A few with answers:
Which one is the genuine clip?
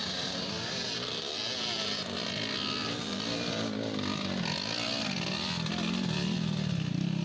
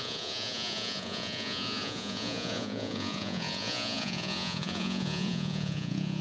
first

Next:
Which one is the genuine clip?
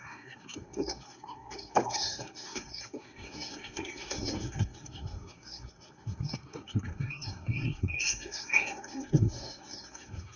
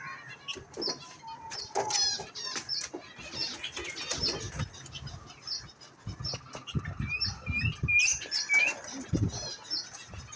second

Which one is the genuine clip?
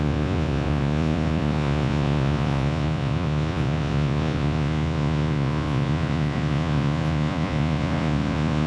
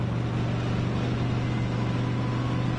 second